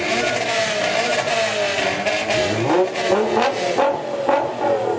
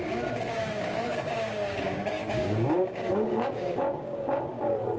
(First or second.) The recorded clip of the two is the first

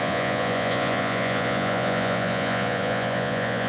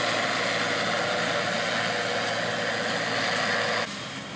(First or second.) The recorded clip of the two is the second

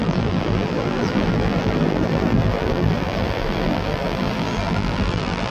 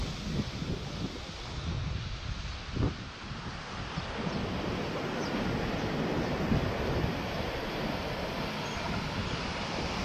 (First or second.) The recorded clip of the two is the second